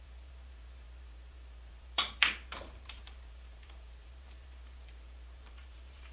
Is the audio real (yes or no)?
no